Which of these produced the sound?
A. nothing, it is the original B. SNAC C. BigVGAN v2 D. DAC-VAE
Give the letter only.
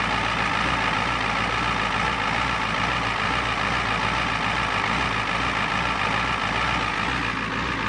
A